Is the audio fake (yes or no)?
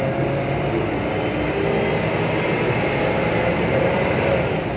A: no